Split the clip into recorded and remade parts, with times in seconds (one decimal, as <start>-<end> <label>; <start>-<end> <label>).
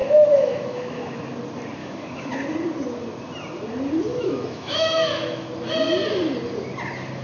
0.0-1.2 remade; 1.2-1.8 recorded; 1.8-2.3 remade; 2.3-4.1 recorded; 4.1-5.5 remade; 5.5-7.2 recorded